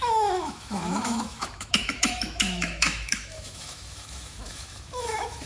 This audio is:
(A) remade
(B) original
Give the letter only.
A